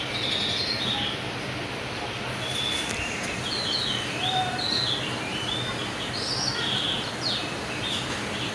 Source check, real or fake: real